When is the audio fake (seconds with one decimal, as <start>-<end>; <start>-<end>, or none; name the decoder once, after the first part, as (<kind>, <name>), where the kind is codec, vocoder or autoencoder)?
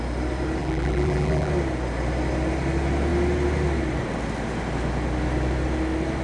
0.6-1.5 (vocoder, BigVGAN v2)